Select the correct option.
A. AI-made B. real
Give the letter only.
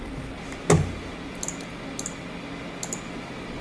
B